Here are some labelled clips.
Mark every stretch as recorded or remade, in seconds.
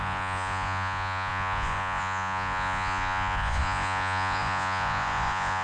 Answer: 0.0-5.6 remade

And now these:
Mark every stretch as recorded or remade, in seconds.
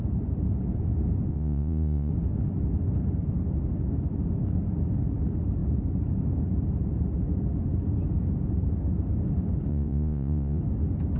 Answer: 0.0-1.3 recorded; 1.3-2.1 remade; 2.1-9.7 recorded; 9.7-10.6 remade; 10.6-11.2 recorded